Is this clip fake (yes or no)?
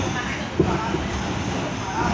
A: no